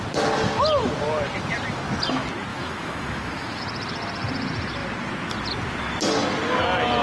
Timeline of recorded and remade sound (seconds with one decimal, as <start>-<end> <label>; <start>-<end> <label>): 0.0-2.5 recorded; 2.5-3.6 remade; 3.6-7.0 recorded